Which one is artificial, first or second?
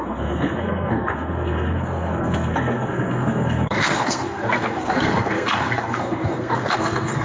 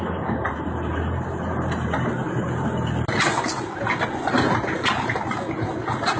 first